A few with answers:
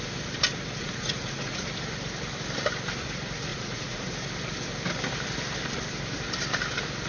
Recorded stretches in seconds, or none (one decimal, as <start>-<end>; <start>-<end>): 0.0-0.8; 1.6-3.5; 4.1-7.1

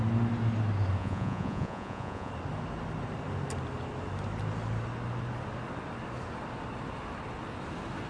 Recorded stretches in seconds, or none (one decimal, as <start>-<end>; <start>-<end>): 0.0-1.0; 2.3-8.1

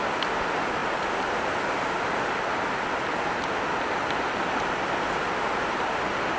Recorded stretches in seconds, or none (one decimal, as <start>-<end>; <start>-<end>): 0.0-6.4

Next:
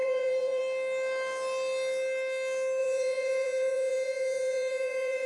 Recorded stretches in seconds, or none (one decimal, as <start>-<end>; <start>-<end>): 0.6-2.8

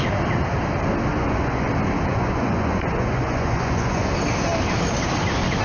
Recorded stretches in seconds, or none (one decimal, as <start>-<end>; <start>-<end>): 0.0-1.1; 1.7-2.1; 4.1-5.6

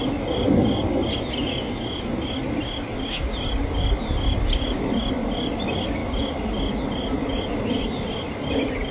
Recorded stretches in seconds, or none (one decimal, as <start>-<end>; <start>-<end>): 0.0-8.9